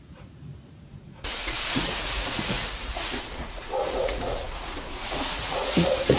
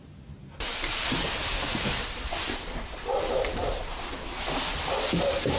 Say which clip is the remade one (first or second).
first